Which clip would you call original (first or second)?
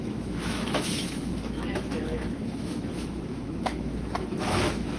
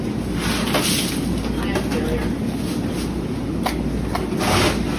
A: second